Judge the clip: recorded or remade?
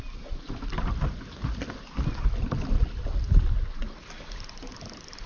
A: recorded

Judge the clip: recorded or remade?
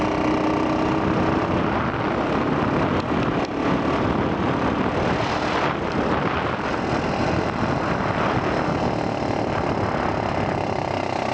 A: recorded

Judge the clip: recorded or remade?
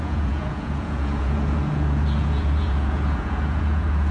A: remade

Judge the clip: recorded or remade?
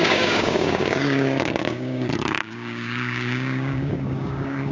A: remade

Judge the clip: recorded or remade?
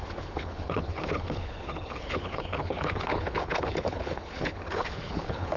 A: remade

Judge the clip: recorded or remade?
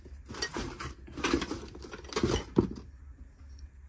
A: recorded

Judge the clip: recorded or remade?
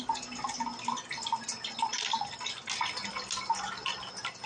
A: recorded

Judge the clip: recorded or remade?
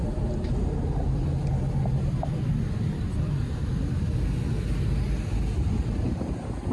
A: recorded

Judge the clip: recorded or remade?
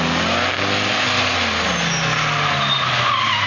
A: recorded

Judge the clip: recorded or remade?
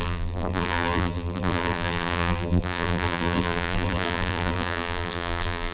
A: remade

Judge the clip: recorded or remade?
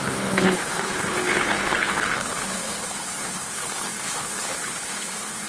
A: remade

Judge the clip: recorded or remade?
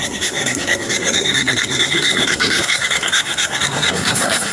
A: remade